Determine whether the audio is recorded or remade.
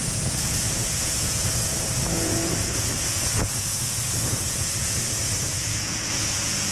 remade